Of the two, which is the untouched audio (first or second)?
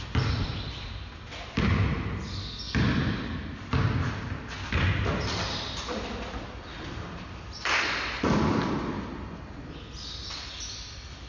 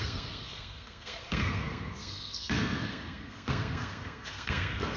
first